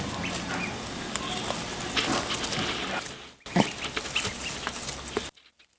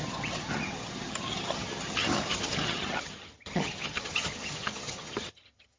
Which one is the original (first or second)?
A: first